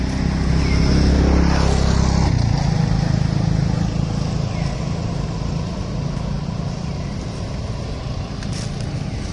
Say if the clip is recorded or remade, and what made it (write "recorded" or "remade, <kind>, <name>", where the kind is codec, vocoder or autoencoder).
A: recorded